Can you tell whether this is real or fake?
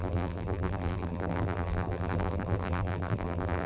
fake